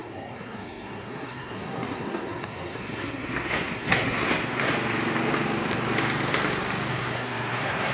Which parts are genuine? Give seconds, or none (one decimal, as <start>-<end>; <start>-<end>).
4.7-6.9